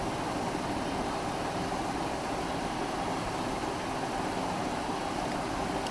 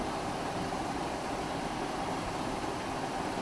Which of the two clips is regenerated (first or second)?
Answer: second